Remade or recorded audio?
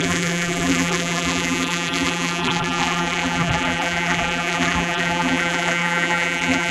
remade